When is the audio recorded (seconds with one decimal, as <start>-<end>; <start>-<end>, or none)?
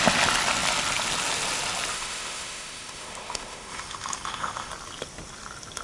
0.0-1.9; 4.7-5.8